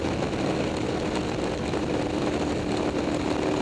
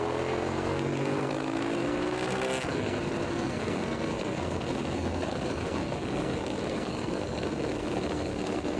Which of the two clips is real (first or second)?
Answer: first